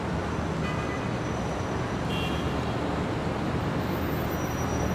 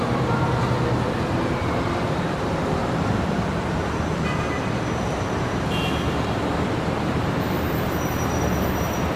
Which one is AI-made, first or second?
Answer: second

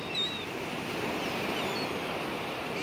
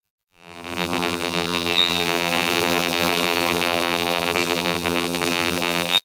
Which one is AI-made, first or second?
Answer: second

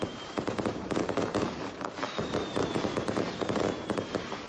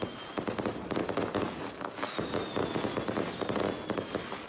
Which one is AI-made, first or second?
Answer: first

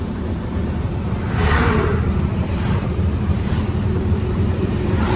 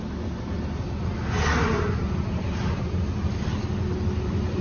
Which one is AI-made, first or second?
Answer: first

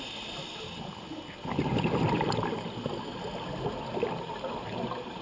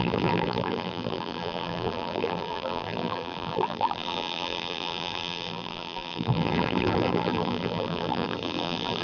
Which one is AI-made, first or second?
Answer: second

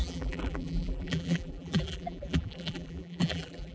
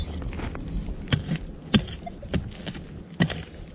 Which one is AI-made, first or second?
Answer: first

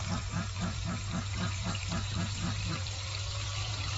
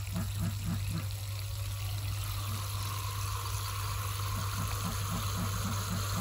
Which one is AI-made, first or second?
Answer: first